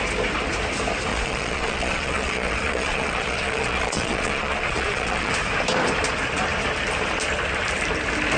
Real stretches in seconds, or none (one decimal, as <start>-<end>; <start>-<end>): 0.0-1.1; 5.3-8.4